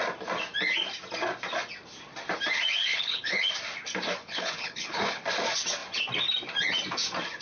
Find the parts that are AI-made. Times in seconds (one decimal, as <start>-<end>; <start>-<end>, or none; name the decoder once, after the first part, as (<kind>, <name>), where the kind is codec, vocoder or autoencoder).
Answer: 2.9-3.5 (codec, HILCodec); 4.2-5.2